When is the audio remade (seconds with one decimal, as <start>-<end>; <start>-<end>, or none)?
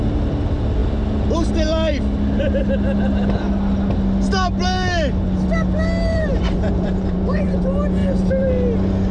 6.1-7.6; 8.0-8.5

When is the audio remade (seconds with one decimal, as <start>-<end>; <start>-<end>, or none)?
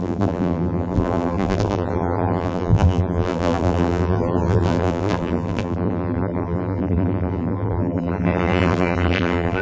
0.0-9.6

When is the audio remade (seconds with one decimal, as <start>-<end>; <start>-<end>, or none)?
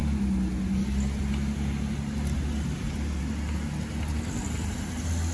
none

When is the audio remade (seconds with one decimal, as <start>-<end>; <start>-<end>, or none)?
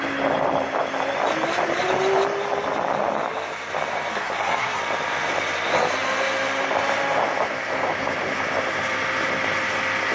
4.1-4.8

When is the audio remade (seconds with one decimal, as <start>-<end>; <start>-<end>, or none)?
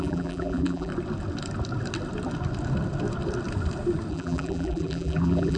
0.0-0.9; 4.1-5.6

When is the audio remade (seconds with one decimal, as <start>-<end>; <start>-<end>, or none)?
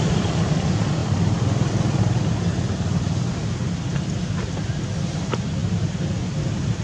0.0-1.0; 2.0-3.4; 4.4-5.6; 6.2-6.8